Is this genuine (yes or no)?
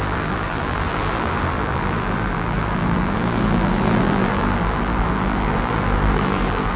no